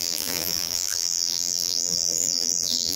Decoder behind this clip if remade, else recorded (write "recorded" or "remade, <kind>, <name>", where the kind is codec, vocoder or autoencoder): remade, vocoder, BigVGAN v2